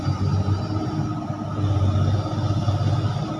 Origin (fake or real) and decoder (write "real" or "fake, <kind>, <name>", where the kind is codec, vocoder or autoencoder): real